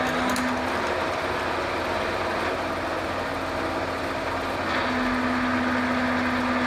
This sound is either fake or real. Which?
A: real